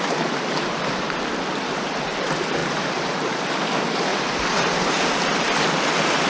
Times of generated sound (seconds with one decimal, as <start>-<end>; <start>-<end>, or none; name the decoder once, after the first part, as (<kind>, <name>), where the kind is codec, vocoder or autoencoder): 2.6-3.4 (vocoder, BigVGAN v2); 4.1-4.9